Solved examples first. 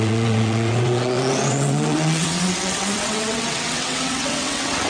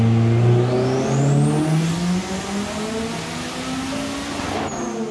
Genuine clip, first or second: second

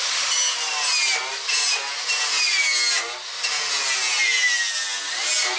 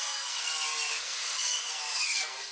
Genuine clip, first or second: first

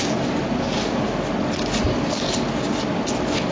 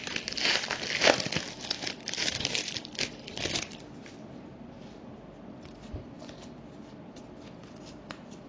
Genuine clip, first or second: first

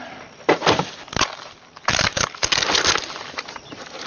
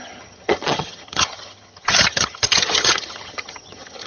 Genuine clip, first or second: first